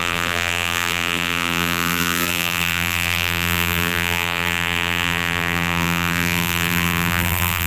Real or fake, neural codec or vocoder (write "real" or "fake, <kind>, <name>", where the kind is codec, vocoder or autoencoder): fake, vocoder, BigVGAN v2